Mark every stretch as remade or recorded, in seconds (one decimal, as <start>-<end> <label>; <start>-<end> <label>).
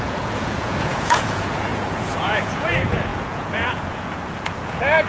0.0-5.1 remade